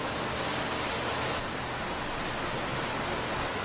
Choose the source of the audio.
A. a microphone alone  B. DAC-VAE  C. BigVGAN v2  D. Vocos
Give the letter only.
A